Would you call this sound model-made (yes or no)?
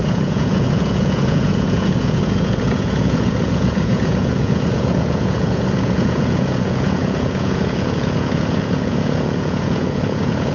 yes